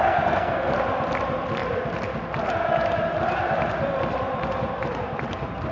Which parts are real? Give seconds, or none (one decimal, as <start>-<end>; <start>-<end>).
0.7-5.7